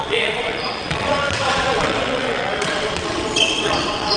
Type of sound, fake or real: fake